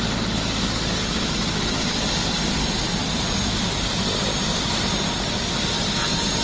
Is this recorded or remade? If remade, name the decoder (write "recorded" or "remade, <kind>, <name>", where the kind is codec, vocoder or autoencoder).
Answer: recorded